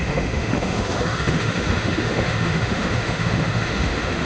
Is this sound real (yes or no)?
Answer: no